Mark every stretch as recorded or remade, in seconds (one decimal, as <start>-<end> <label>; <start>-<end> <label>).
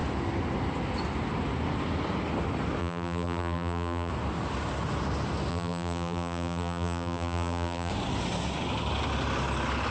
0.0-2.8 recorded; 2.8-4.1 remade; 4.1-5.5 recorded; 5.5-7.9 remade; 7.9-9.9 recorded